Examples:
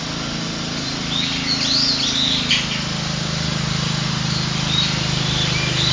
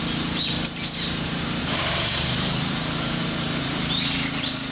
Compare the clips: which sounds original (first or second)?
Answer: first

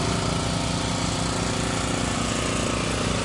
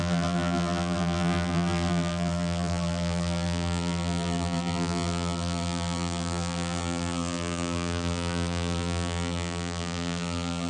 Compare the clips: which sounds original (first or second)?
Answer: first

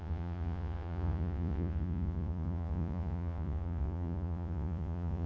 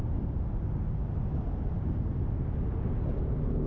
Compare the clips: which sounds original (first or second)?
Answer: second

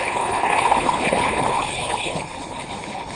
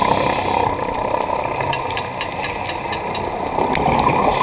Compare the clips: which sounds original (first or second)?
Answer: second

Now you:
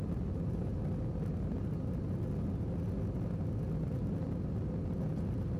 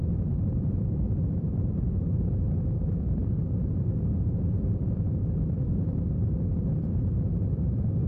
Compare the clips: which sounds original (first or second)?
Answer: first